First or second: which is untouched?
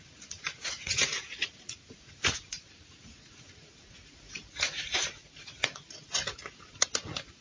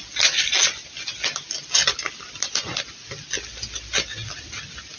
second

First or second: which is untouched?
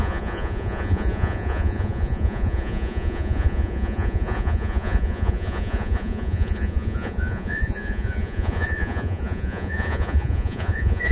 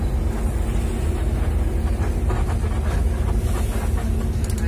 second